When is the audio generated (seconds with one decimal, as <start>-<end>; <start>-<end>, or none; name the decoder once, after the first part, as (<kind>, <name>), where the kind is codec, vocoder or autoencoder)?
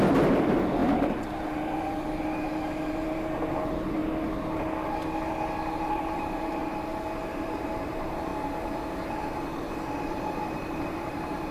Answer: 0.0-4.0 (vocoder, BigVGAN v2); 5.8-8.3; 10.0-11.5